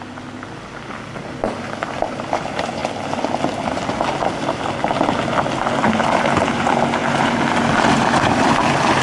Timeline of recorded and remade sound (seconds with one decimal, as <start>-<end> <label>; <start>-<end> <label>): 0.0-9.0 recorded

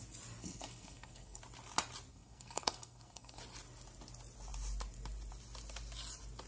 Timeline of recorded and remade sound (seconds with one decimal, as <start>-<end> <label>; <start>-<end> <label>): 0.0-0.4 recorded; 0.4-1.4 remade; 1.4-2.1 recorded; 2.1-3.4 remade; 3.4-6.5 recorded

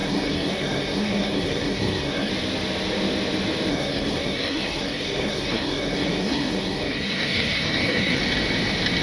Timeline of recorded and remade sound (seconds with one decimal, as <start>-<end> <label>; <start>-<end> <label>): 0.0-2.3 remade; 2.3-3.7 recorded; 3.7-8.2 remade; 8.2-9.0 recorded

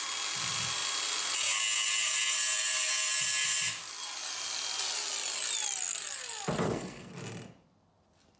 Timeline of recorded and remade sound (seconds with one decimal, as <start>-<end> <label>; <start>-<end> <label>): 0.0-6.6 recorded; 6.6-7.1 remade; 7.1-8.4 recorded

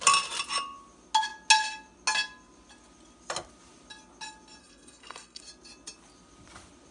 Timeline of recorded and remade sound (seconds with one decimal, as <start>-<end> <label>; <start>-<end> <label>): 0.0-4.6 recorded; 4.6-5.4 remade; 5.4-6.9 recorded

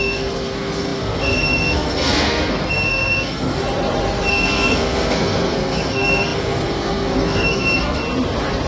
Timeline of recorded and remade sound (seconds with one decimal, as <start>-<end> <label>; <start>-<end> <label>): 0.0-3.6 remade; 3.6-4.3 recorded; 4.3-8.0 remade; 8.0-8.7 recorded

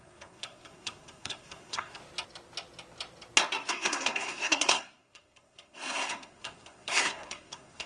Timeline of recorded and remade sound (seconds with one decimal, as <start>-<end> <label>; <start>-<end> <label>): 0.0-2.0 remade; 2.0-3.7 recorded; 3.7-7.9 remade

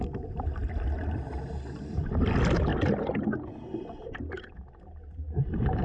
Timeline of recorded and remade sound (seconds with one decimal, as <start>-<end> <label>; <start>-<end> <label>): 0.0-5.8 recorded